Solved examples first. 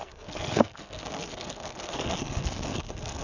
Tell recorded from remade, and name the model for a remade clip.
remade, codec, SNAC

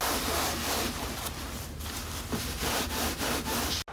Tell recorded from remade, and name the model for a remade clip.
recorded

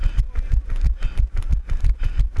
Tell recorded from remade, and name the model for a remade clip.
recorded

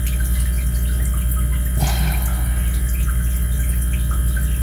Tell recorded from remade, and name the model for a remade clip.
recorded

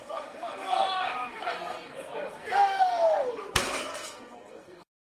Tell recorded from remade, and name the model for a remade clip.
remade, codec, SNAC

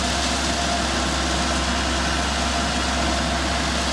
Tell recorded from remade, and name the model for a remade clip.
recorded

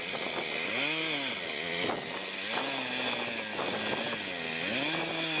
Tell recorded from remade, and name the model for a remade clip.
recorded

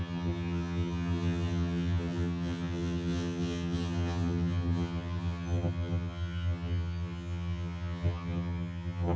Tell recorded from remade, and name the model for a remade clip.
remade, vocoder, HiFi-GAN